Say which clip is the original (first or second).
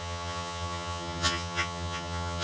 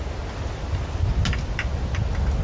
second